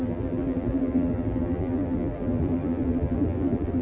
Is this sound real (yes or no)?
no